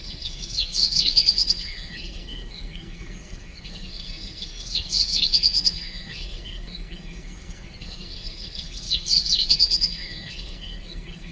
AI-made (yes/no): yes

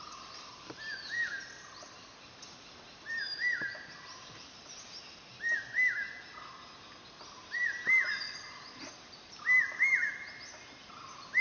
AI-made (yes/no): no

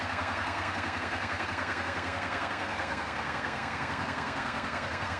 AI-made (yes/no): yes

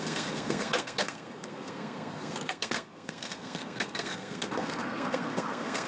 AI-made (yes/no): yes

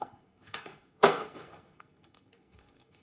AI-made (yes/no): yes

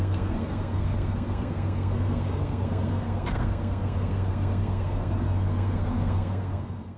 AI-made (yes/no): yes